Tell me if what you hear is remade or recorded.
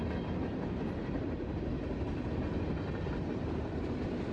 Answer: recorded